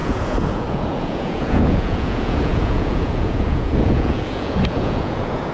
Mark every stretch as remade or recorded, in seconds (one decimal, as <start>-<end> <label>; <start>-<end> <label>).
0.0-5.5 remade